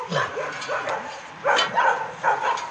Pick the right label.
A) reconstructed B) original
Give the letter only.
B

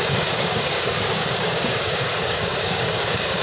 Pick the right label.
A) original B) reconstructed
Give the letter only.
B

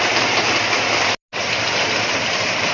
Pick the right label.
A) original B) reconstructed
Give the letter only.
A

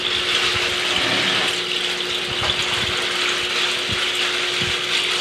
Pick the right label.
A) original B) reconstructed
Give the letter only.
A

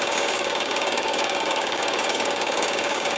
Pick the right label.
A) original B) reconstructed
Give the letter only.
B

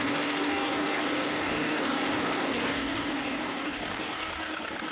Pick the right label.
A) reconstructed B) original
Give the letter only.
A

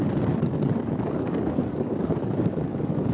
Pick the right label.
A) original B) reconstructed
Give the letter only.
B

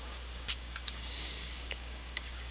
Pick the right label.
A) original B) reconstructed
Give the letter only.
B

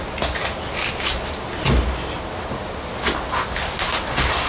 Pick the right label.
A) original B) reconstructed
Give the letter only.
A